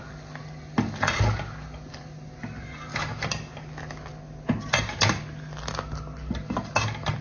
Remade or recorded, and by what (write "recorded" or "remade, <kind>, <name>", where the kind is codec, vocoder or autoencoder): recorded